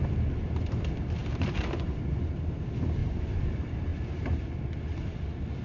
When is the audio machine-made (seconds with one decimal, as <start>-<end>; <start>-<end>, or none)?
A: 1.2-2.1; 3.0-3.5; 3.9-4.8